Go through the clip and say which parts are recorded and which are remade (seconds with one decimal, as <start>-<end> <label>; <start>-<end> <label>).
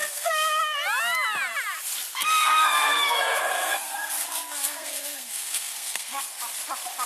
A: 0.0-0.6 remade; 0.6-2.1 recorded; 2.1-6.2 remade; 6.2-7.1 recorded